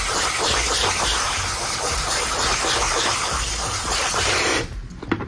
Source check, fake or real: fake